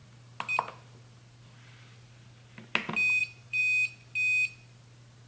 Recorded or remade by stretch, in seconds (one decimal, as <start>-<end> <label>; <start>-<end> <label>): 0.0-3.2 recorded; 3.2-3.6 remade; 3.6-5.3 recorded